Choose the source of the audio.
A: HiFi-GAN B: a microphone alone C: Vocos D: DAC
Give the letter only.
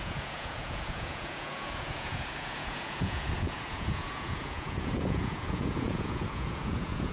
C